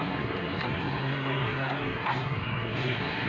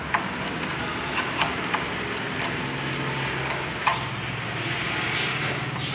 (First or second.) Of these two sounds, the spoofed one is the first